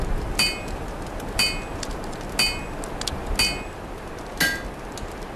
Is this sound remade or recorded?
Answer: recorded